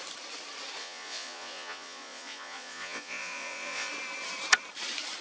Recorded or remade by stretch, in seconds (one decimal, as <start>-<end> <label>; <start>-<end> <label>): 0.0-0.8 recorded; 0.8-3.9 remade; 3.9-5.2 recorded